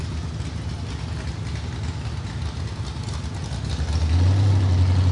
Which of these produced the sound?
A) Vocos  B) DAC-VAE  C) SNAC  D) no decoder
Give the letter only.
D